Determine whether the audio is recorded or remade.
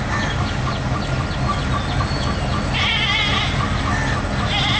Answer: recorded